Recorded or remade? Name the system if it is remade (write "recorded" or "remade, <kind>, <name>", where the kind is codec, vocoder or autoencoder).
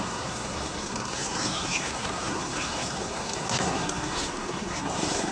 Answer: remade, codec, SNAC